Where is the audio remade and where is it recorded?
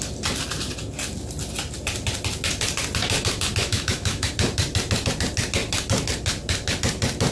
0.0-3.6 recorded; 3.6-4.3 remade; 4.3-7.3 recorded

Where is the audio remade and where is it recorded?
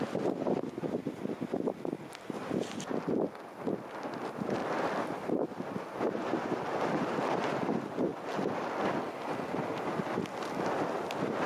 0.0-11.5 recorded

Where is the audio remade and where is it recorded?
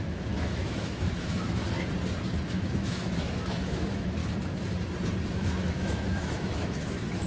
0.0-1.6 remade; 1.6-2.5 recorded; 2.5-4.2 remade; 4.2-5.3 recorded; 5.3-7.3 remade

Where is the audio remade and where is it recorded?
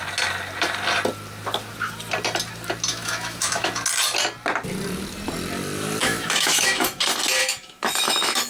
0.0-2.9 recorded; 2.9-3.7 remade; 3.7-6.0 recorded; 6.0-7.0 remade; 7.0-7.4 recorded; 7.4-8.5 remade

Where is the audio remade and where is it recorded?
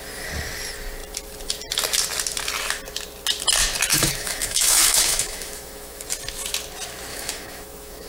0.0-3.9 recorded; 3.9-6.0 remade; 6.0-7.1 recorded; 7.1-8.1 remade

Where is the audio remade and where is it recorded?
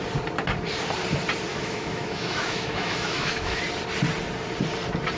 0.0-1.5 recorded; 1.5-3.6 remade; 3.6-5.2 recorded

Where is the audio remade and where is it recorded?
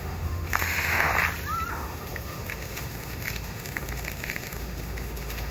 0.0-1.1 remade; 1.1-1.7 recorded; 1.7-5.5 remade